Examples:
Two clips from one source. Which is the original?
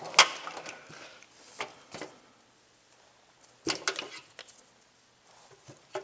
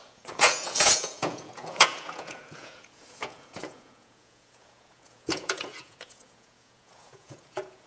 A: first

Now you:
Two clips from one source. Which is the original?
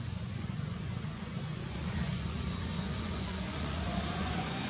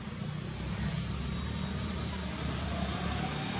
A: second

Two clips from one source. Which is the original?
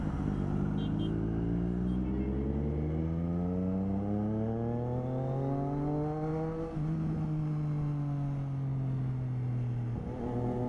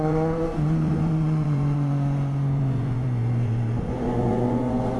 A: first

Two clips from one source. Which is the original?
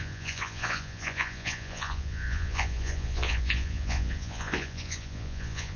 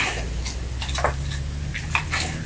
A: second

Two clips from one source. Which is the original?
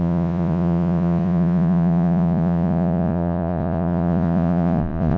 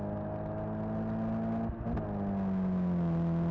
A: second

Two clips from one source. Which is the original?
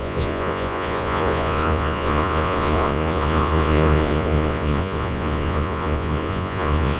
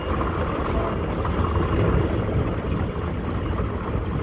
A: second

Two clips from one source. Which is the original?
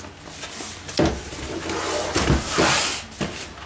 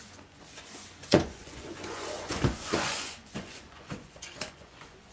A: first